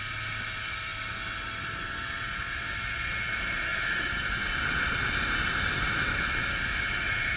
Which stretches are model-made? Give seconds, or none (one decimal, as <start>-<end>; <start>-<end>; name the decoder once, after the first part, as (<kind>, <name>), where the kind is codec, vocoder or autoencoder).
none